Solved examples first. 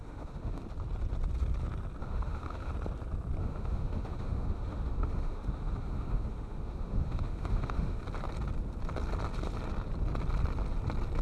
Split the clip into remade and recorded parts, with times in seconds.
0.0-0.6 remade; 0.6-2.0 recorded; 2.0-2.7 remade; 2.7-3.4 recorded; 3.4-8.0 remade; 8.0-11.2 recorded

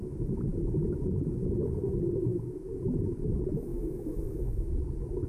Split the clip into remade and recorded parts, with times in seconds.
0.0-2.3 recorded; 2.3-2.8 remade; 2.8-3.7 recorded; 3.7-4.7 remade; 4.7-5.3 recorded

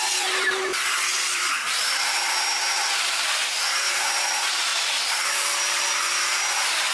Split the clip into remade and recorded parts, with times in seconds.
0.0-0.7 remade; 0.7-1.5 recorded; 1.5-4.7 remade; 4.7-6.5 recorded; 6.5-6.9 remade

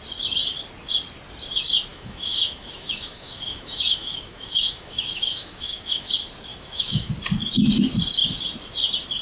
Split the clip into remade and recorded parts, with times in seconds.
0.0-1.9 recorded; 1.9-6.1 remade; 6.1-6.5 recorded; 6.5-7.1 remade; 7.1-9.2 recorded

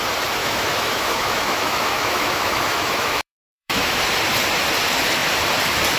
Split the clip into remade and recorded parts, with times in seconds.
0.0-0.4 recorded; 0.4-4.0 remade; 4.0-6.0 recorded

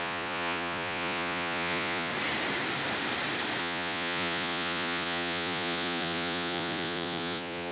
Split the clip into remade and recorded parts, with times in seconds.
0.0-2.1 remade; 2.1-3.6 recorded; 3.6-7.7 remade

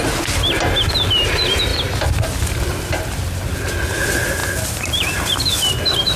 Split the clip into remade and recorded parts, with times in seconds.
0.0-6.2 recorded

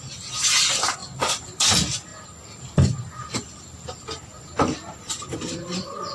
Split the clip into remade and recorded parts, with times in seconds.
0.0-1.0 recorded; 1.0-1.7 remade; 1.7-4.3 recorded; 4.3-5.1 remade; 5.1-6.1 recorded